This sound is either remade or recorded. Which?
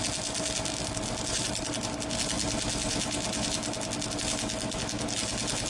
recorded